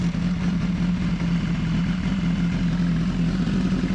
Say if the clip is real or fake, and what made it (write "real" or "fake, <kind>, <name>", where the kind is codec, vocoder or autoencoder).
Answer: real